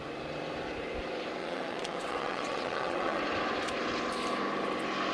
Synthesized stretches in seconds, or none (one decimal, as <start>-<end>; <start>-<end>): 1.4-3.2